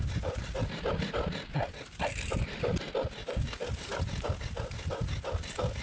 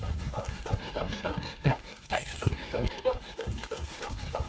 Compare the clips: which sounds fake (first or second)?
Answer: second